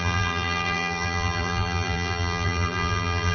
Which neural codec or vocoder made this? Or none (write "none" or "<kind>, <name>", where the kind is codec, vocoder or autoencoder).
vocoder, BigVGAN v2